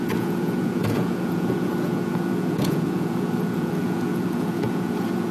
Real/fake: fake